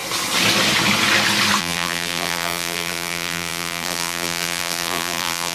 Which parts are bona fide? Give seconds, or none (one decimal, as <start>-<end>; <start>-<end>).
0.0-1.6